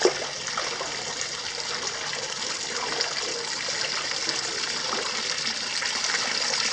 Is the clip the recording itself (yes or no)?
yes